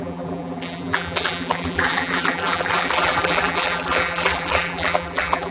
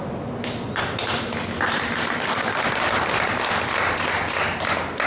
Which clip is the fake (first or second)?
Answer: first